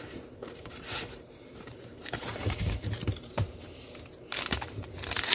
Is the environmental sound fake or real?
fake